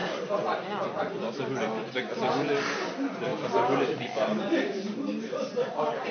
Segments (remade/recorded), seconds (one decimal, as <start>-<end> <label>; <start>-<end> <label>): 0.0-3.3 recorded; 3.3-6.1 remade